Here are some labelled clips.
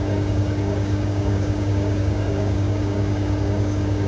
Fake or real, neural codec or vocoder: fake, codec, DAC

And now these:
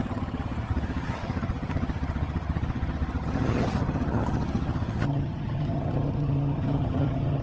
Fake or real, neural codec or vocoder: fake, vocoder, HiFi-GAN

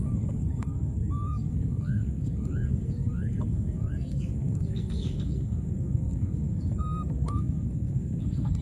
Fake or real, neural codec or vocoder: fake, codec, SNAC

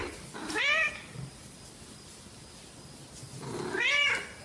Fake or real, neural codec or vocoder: real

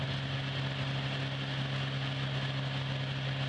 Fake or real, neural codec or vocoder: real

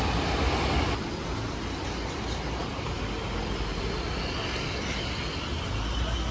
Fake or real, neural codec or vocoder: real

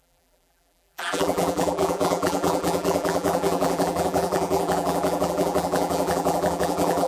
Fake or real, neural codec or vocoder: fake, vocoder, BigVGAN v2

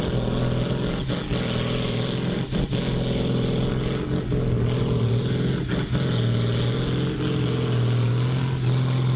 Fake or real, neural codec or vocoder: real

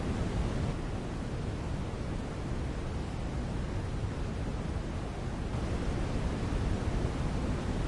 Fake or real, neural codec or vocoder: real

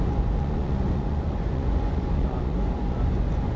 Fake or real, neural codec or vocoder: fake, vocoder, Vocos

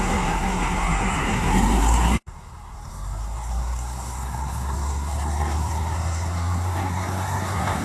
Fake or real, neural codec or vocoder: fake, codec, SNAC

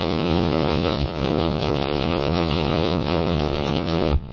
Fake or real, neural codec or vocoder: fake, vocoder, Vocos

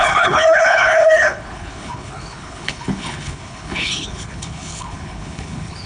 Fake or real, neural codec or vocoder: fake, codec, HILCodec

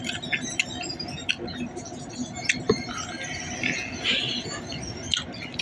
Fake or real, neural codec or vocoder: real